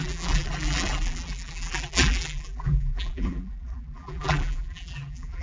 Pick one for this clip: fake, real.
fake